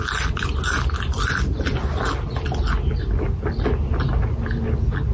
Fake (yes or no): no